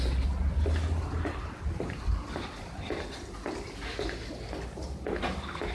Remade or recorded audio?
recorded